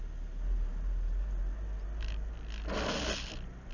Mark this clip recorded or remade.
recorded